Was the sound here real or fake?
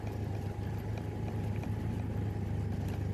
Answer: real